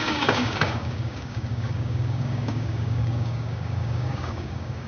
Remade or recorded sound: remade